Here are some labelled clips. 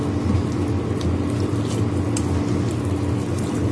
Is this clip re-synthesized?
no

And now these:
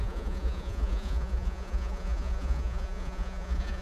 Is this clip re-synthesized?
yes